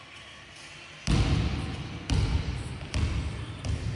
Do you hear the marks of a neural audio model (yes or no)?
no